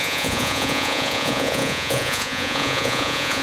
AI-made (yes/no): yes